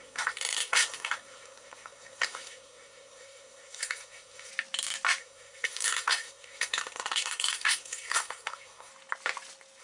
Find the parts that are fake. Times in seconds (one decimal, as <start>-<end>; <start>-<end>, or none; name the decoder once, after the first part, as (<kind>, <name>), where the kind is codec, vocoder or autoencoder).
0.0-4.5 (codec, SNAC); 5.2-8.9